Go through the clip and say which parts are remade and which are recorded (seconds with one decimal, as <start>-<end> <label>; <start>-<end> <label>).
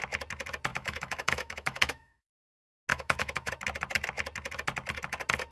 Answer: 0.0-0.7 recorded; 0.7-2.4 remade; 2.4-2.9 recorded; 2.9-3.5 remade; 3.5-5.5 recorded